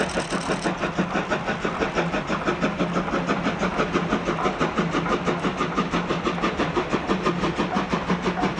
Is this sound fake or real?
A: real